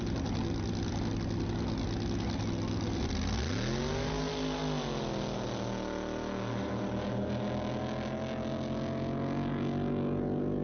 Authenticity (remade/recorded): recorded